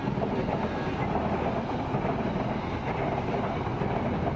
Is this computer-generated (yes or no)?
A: no